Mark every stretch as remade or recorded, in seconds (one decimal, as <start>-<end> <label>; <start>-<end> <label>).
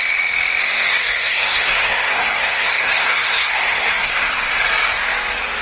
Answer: 0.0-0.9 recorded; 0.9-4.3 remade; 4.3-5.6 recorded